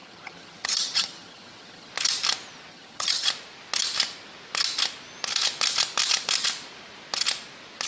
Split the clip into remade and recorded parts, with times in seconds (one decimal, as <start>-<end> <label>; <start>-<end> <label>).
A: 0.0-1.9 remade; 1.9-2.7 recorded; 2.7-3.3 remade; 3.3-7.9 recorded